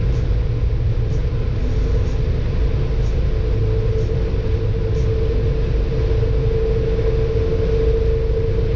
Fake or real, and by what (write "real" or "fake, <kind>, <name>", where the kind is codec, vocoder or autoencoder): real